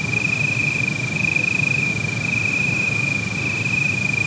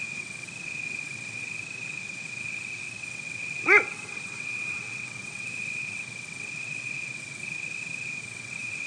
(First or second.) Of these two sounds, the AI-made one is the second